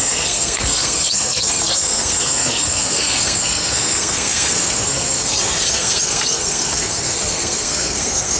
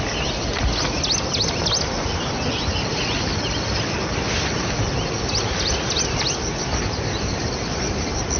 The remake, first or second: first